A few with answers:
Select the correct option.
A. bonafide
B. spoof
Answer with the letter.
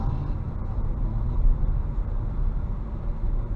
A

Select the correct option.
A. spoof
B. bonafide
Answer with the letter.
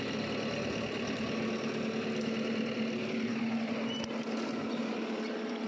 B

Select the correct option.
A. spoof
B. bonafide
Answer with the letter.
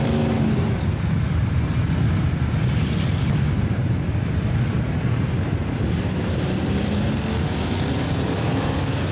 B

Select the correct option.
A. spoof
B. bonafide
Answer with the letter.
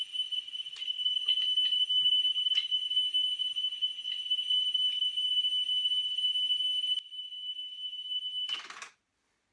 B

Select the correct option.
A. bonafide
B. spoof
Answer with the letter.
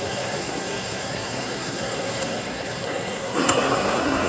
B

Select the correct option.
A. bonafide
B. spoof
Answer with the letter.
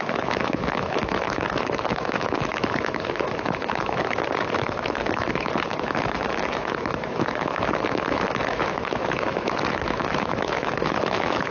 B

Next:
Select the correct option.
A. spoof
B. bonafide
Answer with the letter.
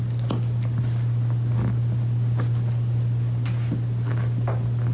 B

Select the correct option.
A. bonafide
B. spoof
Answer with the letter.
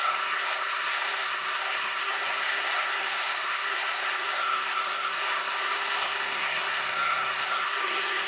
B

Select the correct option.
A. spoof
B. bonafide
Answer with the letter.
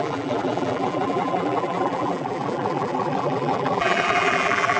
A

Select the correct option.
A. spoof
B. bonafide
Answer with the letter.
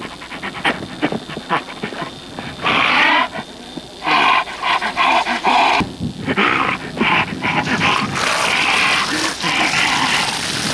B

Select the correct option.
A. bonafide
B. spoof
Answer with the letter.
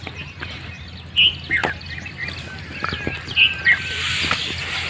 A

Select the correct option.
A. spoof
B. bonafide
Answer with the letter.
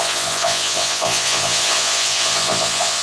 A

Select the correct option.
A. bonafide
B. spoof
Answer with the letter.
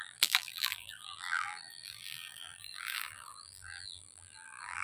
B